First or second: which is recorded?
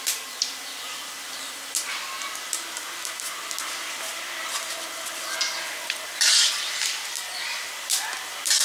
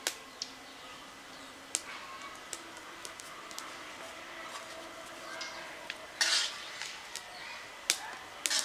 second